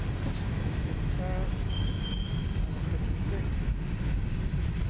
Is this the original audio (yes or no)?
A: yes